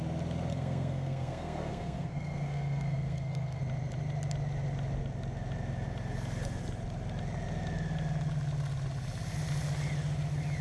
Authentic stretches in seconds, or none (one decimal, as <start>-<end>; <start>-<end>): 0.0-0.5; 3.6-10.6